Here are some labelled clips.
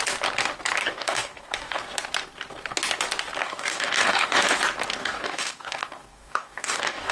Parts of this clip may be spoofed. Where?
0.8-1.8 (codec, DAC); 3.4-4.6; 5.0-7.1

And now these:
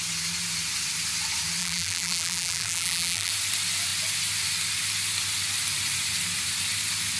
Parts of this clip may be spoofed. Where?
1.6-3.3 (vocoder, BigVGAN v2)

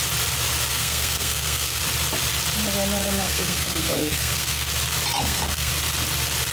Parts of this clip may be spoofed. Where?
0.7-1.8 (codec, SNAC); 3.0-4.7; 5.2-5.7

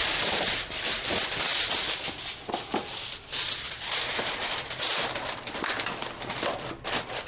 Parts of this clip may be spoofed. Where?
none

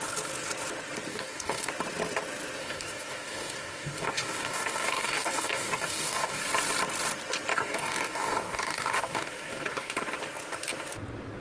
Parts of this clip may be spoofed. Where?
1.1-1.7 (codec, DAC); 2.6-6.4; 7.5-10.0

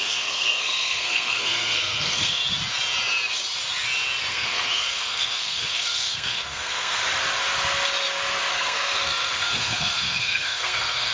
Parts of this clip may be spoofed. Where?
0.0-2.4 (codec, SNAC); 4.3-7.0; 8.5-11.1

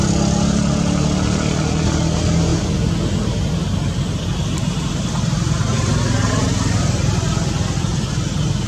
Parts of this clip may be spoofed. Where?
4.9-5.9 (vocoder, BigVGAN v2)